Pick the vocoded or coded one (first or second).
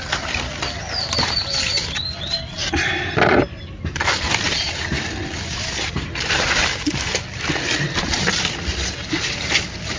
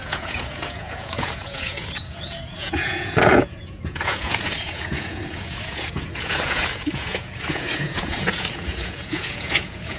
second